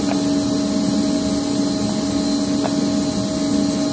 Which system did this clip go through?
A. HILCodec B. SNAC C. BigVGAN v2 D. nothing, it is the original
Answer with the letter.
D